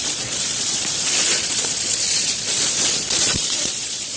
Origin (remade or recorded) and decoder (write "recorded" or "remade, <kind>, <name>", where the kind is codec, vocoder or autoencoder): remade, vocoder, Vocos